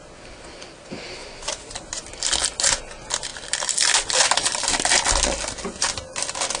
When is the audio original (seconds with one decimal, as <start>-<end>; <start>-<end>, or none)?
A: 0.0-3.3; 4.7-6.6